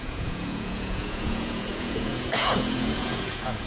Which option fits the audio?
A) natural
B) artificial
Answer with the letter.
B